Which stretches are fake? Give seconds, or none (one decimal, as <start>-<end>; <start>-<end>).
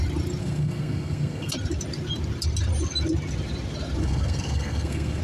0.4-1.5; 4.0-5.2